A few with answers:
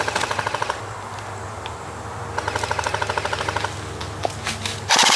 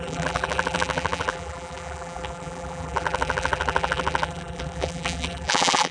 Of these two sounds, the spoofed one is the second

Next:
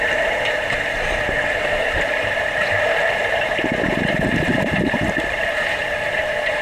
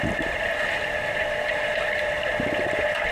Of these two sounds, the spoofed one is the first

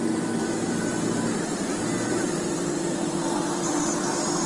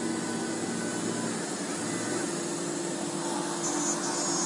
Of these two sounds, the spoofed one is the first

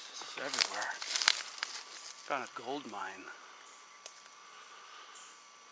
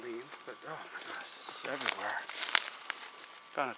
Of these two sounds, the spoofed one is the first